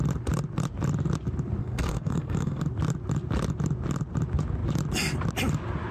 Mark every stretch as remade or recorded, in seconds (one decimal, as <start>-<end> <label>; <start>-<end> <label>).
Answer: 0.0-1.6 recorded; 1.6-2.6 remade; 2.6-5.9 recorded